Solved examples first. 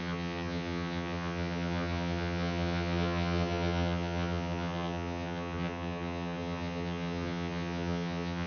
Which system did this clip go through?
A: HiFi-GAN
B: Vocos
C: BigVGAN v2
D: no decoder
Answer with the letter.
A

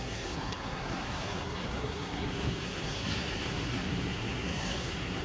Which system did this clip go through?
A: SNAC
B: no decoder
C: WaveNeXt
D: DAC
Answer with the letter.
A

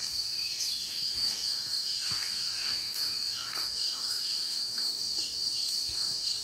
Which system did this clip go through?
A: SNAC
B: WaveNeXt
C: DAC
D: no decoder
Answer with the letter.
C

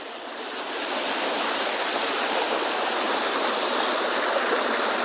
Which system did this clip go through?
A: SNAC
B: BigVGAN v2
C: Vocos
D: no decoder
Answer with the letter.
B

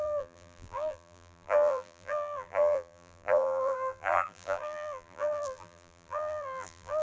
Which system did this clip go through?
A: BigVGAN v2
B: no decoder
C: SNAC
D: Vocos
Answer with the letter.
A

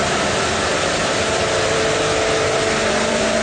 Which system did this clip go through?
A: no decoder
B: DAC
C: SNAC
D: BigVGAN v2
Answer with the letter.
D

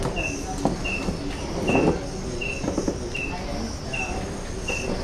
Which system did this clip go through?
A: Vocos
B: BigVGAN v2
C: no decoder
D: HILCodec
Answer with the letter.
C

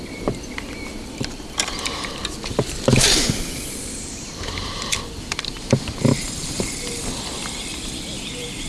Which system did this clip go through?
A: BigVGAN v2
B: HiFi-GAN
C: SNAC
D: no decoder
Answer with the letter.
A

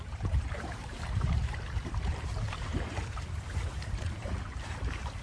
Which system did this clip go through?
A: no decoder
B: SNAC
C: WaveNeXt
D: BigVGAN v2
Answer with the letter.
D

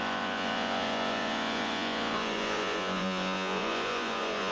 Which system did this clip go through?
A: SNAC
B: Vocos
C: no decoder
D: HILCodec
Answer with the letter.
B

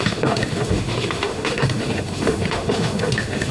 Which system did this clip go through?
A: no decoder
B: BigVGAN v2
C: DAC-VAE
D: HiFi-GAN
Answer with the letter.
C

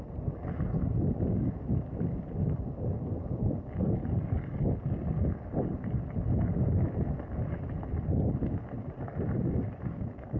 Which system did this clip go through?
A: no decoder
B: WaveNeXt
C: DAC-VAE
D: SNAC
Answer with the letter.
A